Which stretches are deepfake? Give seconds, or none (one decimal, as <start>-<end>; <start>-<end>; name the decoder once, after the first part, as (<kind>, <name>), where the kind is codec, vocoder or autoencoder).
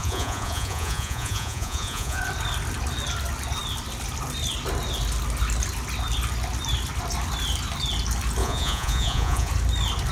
0.0-2.2 (vocoder, Vocos); 8.4-9.5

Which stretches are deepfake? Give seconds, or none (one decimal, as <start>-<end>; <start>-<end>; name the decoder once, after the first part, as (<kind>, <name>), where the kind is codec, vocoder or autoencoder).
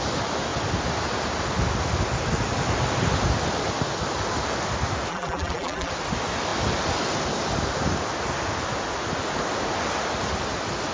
5.1-5.9 (vocoder, BigVGAN v2)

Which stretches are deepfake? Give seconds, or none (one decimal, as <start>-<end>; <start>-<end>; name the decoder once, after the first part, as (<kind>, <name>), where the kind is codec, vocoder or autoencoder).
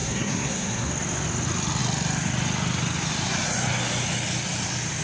0.0-0.9 (codec, SNAC)